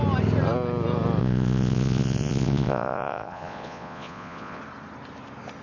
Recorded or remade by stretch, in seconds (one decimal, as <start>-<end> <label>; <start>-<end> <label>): 0.0-1.2 recorded; 1.2-4.6 remade; 4.6-5.6 recorded